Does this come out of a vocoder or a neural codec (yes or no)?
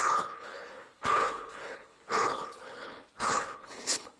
yes